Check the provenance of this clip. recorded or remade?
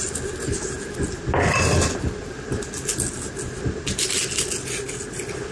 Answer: recorded